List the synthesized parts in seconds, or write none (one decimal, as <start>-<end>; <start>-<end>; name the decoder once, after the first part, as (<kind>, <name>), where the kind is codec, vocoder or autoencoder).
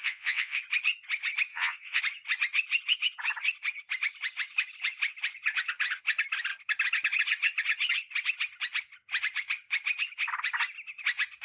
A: 0.0-0.6 (vocoder, WaveNeXt); 1.5-2.0